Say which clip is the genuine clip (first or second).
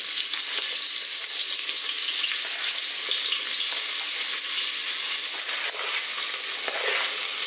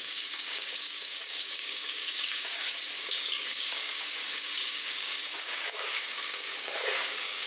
first